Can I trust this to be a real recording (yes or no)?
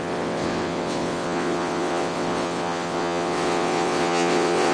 no